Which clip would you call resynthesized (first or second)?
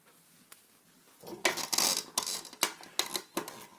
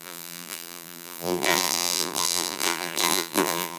second